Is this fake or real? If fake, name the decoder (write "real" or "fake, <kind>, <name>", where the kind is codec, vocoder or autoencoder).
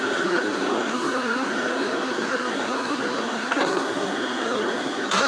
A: fake, codec, SNAC